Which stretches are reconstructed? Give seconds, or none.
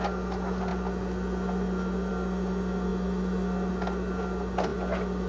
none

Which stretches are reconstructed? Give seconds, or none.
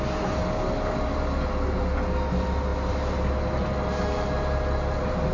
none